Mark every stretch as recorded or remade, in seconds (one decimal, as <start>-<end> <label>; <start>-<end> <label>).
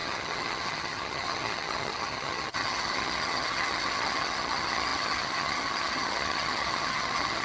0.0-7.4 remade